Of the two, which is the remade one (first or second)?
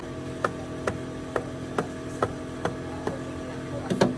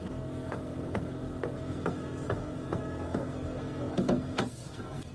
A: second